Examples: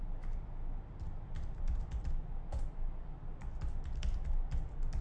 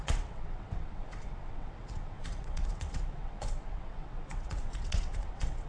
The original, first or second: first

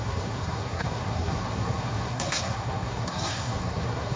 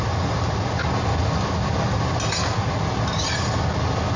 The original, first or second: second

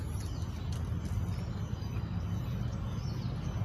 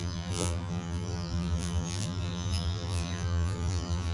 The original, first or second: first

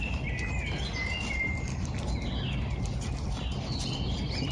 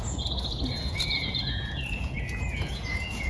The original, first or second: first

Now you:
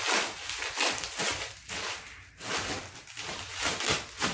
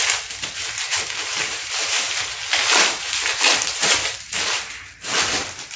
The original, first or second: first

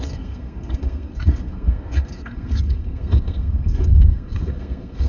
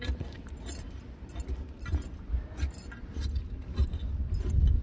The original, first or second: second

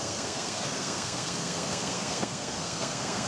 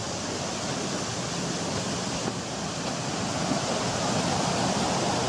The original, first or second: second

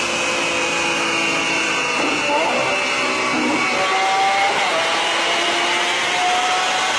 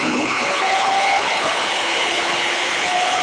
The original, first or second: first